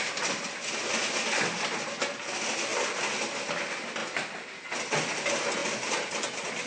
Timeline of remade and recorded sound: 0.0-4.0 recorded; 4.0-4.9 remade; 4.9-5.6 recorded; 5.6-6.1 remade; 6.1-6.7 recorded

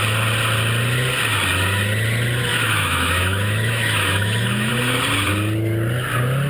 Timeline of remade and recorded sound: 0.0-2.5 recorded; 2.5-4.7 remade; 4.7-6.5 recorded

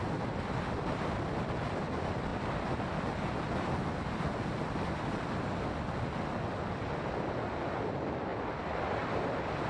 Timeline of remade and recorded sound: 0.0-8.3 recorded; 8.3-9.7 remade

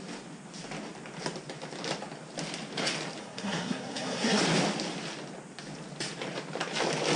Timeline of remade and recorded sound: 0.0-3.2 recorded; 3.2-4.4 remade; 4.4-7.2 recorded

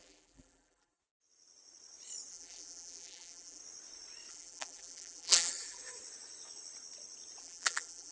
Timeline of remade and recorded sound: 0.0-1.0 remade; 1.0-2.3 recorded; 2.3-3.6 remade; 3.6-4.3 recorded; 4.3-5.8 remade; 5.8-7.4 recorded; 7.4-8.1 remade